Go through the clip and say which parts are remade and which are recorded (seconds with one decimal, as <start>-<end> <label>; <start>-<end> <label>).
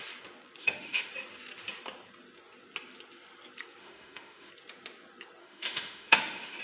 0.0-0.6 recorded; 0.6-1.1 remade; 1.1-3.8 recorded; 3.8-4.5 remade; 4.5-5.4 recorded; 5.4-6.6 remade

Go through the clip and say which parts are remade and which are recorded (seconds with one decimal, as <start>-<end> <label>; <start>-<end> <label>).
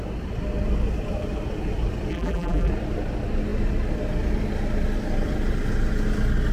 0.0-2.1 recorded; 2.1-2.7 remade; 2.7-6.5 recorded